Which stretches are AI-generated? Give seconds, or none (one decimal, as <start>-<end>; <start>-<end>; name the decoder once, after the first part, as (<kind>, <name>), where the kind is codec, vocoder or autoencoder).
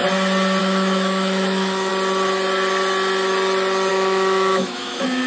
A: 0.6-1.9 (autoencoder, DAC-VAE); 3.9-5.3